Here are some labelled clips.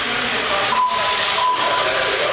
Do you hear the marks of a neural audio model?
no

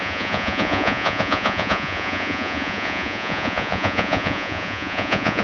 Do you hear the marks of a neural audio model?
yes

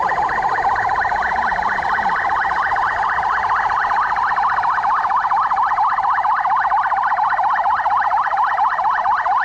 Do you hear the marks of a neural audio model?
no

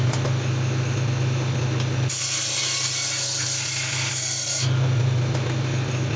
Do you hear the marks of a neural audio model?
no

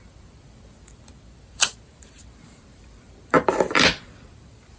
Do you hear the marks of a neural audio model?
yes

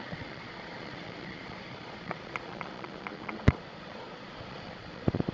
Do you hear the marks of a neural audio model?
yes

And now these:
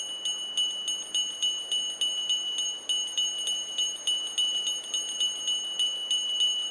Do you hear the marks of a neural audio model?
no